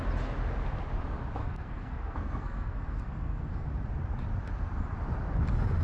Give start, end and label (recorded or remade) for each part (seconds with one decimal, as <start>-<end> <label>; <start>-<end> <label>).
0.0-1.4 recorded; 1.4-3.7 remade; 3.7-5.8 recorded